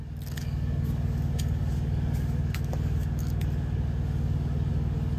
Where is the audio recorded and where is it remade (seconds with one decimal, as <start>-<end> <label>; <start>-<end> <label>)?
0.0-5.2 remade